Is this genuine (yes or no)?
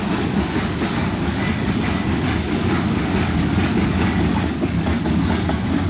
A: no